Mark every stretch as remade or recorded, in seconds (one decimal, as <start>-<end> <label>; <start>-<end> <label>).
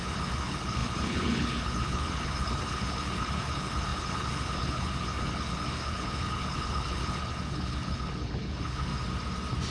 0.0-8.9 remade; 8.9-9.7 recorded